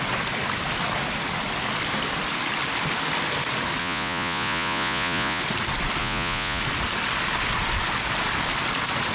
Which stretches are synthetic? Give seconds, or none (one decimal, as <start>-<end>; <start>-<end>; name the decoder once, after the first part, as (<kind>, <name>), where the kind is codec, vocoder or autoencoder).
3.8-5.4 (vocoder, Vocos); 6.0-6.6